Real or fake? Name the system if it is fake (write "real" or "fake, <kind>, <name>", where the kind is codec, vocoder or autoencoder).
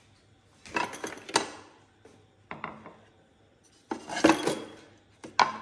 real